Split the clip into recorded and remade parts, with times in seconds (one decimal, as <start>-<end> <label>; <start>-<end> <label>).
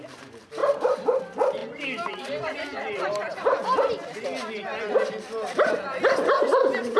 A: 0.0-0.6 recorded; 0.6-1.2 remade; 1.2-7.0 recorded